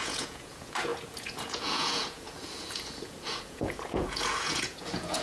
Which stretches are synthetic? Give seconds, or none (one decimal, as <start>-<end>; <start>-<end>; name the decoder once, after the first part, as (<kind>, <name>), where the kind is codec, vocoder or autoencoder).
0.0-5.2 (vocoder, Vocos)